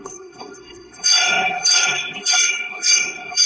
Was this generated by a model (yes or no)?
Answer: yes